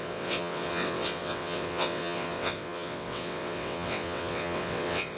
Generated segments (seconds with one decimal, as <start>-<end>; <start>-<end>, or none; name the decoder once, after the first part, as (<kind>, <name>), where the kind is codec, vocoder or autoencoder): 0.0-5.2 (vocoder, WaveNeXt)